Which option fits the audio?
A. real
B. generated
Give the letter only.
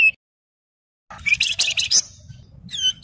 A